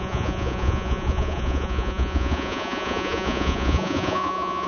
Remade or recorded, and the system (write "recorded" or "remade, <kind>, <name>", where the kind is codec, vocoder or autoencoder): remade, vocoder, Vocos